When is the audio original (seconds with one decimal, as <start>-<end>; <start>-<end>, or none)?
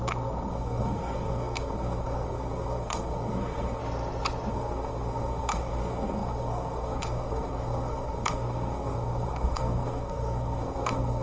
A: 3.8-4.5